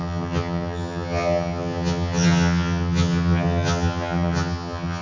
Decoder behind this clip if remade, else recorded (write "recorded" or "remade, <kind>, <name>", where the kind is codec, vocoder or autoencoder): remade, vocoder, HiFi-GAN